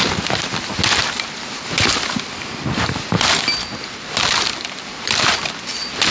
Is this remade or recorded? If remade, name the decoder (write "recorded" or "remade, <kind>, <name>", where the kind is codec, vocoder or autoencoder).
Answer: recorded